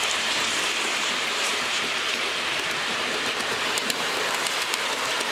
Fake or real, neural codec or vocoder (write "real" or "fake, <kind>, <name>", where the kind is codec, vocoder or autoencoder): fake, vocoder, BigVGAN v2